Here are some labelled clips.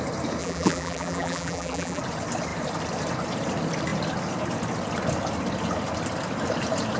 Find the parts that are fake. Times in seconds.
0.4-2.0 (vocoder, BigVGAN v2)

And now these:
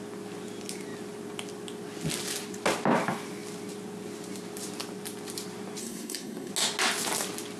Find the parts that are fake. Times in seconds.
5.8-6.5 (codec, SNAC)

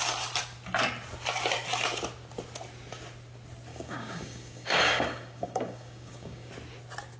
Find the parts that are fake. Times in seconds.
3.7-6.5 (codec, DAC)

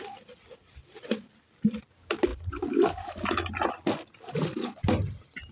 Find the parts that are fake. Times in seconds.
none